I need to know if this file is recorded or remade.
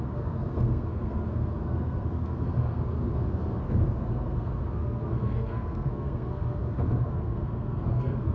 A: remade